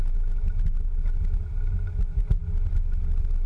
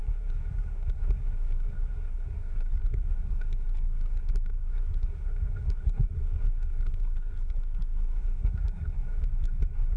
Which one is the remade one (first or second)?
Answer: second